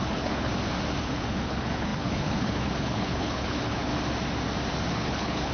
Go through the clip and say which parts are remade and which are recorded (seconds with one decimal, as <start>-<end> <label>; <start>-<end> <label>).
0.0-0.5 remade; 0.5-1.0 recorded; 1.0-3.9 remade; 3.9-4.9 recorded; 4.9-5.5 remade